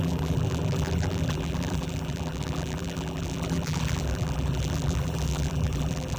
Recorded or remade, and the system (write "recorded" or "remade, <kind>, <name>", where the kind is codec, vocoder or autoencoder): remade, vocoder, BigVGAN v2